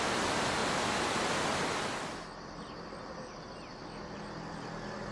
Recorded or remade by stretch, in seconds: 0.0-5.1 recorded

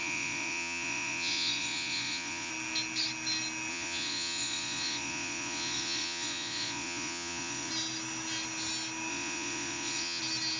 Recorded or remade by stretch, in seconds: 0.0-2.5 remade; 2.5-3.7 recorded; 3.7-7.7 remade; 7.7-9.1 recorded; 9.1-10.2 remade; 10.2-10.6 recorded

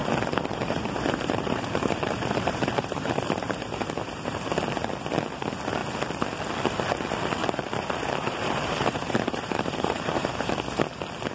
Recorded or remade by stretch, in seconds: 0.0-4.5 remade; 4.5-7.4 recorded; 7.4-10.5 remade; 10.5-11.3 recorded

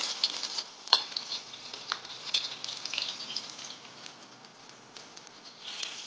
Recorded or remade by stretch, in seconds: 0.0-0.5 recorded; 0.5-2.4 remade; 2.4-4.5 recorded; 4.5-6.1 remade

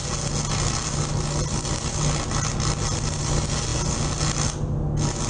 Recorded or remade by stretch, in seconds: 0.0-5.3 recorded

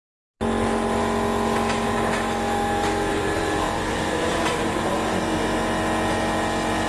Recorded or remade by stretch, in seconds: 0.0-3.1 recorded; 3.1-4.9 remade; 4.9-6.9 recorded

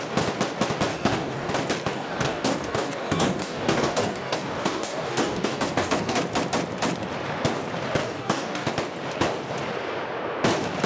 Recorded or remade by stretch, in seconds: 0.0-0.9 recorded; 0.9-1.5 remade; 1.5-1.9 recorded; 1.9-6.2 remade; 6.2-8.0 recorded; 8.0-8.7 remade; 8.7-10.9 recorded